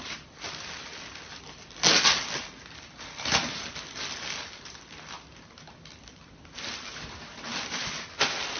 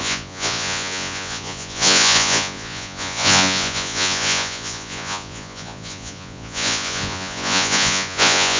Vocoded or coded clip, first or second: second